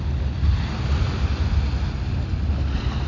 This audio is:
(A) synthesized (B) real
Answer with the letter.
B